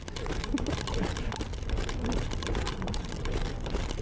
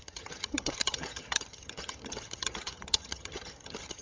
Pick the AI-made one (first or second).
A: second